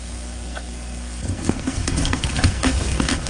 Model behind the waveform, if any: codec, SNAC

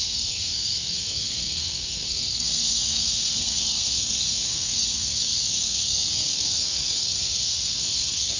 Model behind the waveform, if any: codec, SNAC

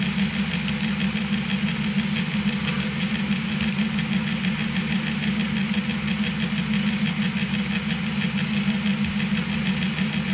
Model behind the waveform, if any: none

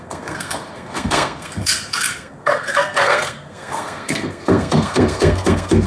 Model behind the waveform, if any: codec, SNAC